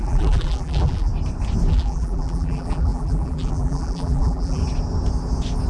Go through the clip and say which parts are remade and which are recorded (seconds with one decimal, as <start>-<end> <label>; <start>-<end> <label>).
0.0-1.1 remade; 1.1-1.7 recorded; 1.7-4.6 remade; 4.6-5.7 recorded